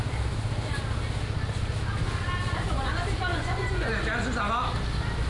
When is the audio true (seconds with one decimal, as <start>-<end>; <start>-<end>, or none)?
0.0-3.3; 3.9-5.3